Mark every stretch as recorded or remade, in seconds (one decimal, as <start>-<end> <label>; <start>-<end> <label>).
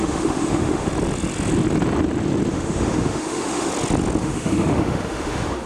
0.0-0.9 remade; 0.9-2.5 recorded; 2.5-3.7 remade; 3.7-4.2 recorded; 4.2-5.7 remade